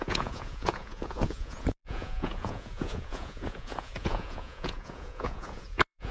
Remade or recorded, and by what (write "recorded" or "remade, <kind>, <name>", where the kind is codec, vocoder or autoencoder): remade, vocoder, Vocos